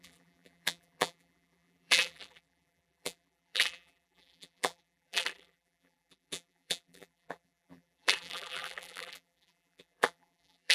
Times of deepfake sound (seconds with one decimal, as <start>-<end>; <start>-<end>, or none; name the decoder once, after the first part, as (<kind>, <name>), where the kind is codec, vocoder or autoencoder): 0.0-10.7 (vocoder, BigVGAN v2)